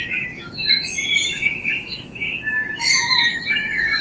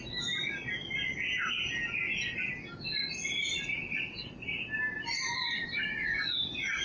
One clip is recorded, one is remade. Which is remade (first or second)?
first